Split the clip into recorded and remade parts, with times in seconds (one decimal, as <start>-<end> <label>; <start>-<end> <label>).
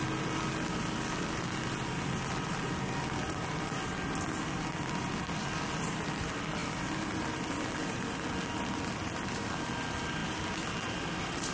0.0-11.5 recorded